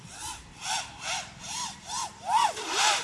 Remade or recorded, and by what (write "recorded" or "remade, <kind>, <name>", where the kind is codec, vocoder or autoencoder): remade, vocoder, BigVGAN v2